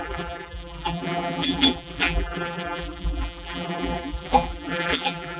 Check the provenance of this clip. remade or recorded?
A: remade